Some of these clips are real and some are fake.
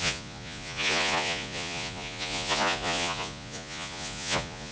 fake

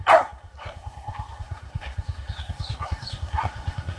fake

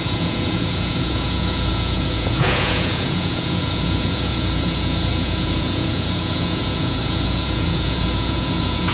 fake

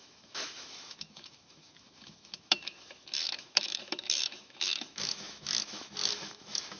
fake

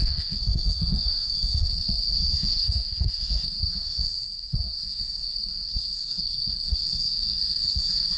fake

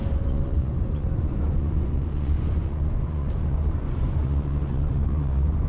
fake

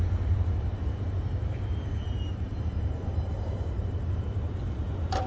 fake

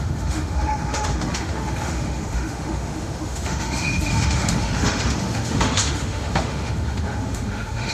fake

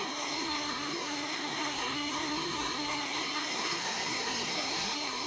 fake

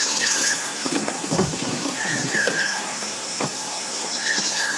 fake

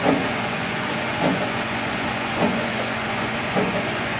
fake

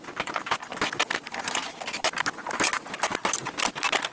real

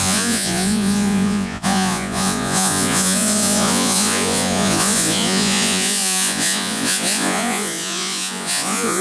fake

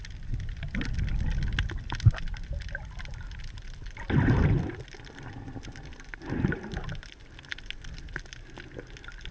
real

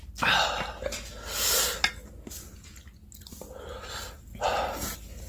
real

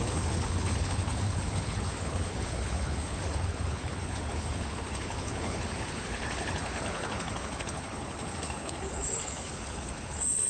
fake